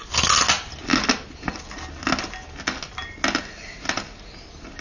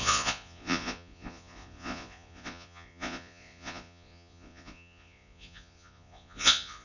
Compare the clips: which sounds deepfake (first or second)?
second